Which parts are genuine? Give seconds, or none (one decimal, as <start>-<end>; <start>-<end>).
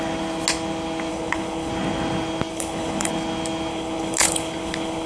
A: 0.0-1.1; 1.7-2.5; 3.1-3.7